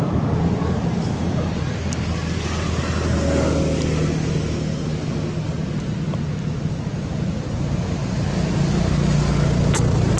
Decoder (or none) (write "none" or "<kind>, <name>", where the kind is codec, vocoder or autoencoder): none